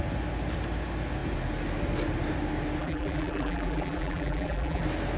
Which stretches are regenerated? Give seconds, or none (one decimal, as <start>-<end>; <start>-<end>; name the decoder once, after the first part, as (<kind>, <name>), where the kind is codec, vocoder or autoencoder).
2.8-4.8 (vocoder, BigVGAN v2)